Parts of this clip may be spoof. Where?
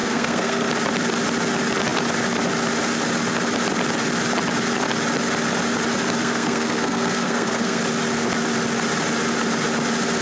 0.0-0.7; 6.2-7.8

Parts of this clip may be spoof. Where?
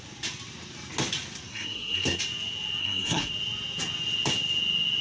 1.5-2.2; 2.8-3.3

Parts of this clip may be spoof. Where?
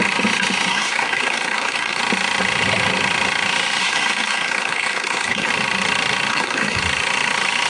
0.7-2.0; 3.8-5.5; 6.3-6.8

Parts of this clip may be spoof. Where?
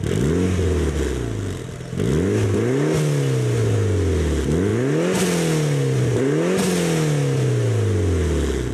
none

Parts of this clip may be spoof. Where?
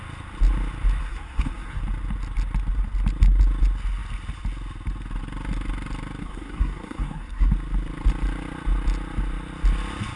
1.0-1.8; 6.2-7.5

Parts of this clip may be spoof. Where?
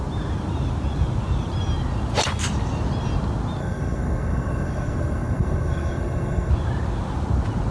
3.6-6.5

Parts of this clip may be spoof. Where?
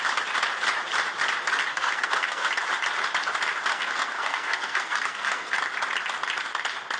1.7-2.5; 3.7-5.6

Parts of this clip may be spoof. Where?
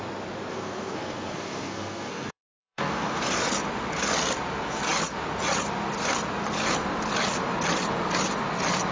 0.5-3.2